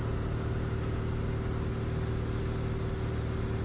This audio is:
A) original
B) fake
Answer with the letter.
A